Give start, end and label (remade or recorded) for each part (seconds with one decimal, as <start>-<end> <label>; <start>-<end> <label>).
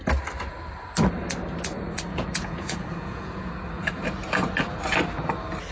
0.0-2.1 recorded; 2.1-3.5 remade; 3.5-5.7 recorded